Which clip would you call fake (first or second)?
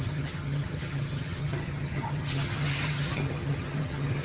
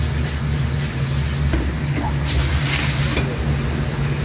first